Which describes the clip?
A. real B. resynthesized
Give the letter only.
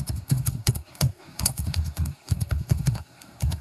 B